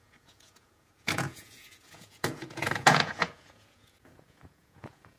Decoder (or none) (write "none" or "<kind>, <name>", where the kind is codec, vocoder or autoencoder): vocoder, Vocos